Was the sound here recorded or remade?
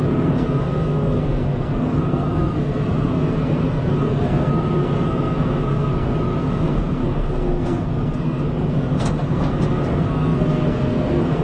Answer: remade